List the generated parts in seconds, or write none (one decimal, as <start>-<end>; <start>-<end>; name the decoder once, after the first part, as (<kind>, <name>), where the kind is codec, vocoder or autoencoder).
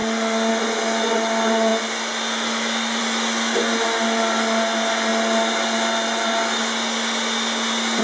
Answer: none